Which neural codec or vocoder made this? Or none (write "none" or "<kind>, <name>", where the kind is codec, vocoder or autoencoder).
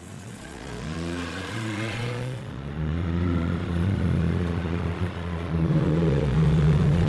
vocoder, Vocos